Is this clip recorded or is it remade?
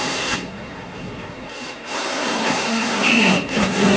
remade